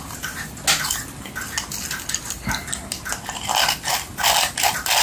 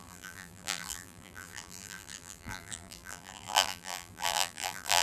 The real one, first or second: first